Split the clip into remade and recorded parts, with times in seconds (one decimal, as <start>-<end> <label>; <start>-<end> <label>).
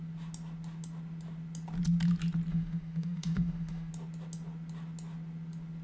0.0-2.5 recorded; 2.5-3.9 remade; 3.9-5.8 recorded